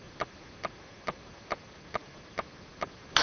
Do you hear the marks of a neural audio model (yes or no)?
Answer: no